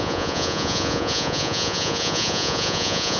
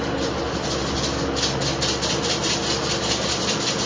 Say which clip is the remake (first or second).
first